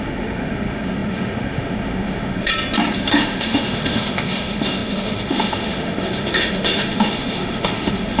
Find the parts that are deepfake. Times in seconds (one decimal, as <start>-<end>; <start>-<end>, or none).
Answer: 0.0-2.5; 3.1-8.2